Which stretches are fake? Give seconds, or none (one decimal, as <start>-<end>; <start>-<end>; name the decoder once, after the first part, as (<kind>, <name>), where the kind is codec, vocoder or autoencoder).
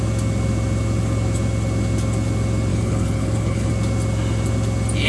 2.7-3.7 (codec, HILCodec)